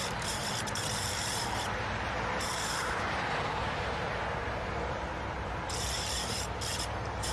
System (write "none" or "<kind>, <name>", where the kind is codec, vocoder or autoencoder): vocoder, BigVGAN v2